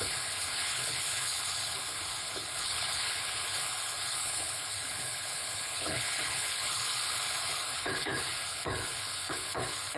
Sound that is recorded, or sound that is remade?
remade